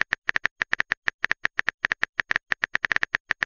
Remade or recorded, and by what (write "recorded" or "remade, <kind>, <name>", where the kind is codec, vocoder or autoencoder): recorded